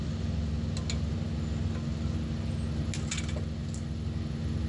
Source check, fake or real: real